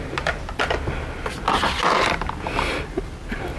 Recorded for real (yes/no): yes